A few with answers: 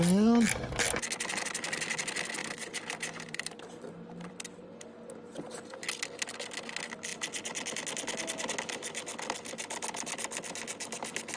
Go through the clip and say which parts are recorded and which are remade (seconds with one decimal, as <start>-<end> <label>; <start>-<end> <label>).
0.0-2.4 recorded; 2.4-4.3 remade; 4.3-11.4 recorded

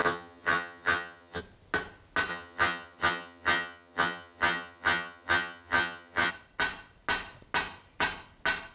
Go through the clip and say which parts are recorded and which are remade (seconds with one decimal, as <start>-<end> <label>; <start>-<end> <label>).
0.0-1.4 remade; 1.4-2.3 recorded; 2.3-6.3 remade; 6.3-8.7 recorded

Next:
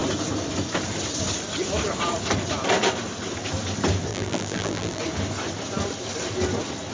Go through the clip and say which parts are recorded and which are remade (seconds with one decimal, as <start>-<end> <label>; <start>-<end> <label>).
0.0-4.1 recorded; 4.1-5.0 remade; 5.0-6.9 recorded

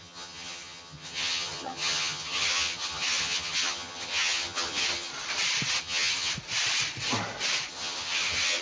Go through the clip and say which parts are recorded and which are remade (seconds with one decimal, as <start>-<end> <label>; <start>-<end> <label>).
0.0-5.1 remade; 5.1-5.8 recorded; 5.8-6.3 remade; 6.3-7.7 recorded; 7.7-8.6 remade

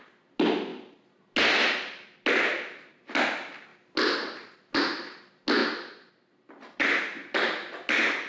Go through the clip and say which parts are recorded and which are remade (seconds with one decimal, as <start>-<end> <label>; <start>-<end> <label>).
0.0-8.3 recorded

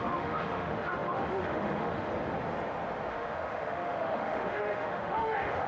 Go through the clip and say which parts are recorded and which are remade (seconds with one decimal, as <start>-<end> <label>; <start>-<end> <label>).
0.0-2.1 remade; 2.1-3.1 recorded; 3.1-5.7 remade